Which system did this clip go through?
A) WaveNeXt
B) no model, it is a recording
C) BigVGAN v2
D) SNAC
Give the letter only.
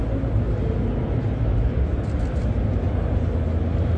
B